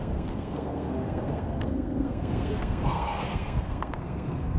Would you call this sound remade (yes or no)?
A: yes